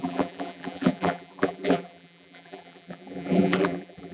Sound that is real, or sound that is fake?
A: fake